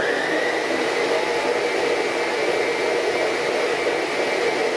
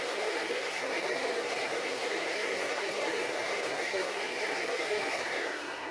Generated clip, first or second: second